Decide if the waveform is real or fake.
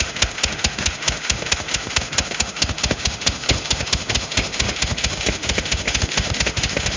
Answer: fake